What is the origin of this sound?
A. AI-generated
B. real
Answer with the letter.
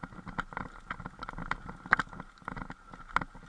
B